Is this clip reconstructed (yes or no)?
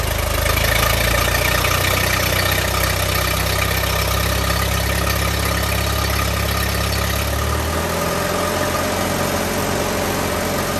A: no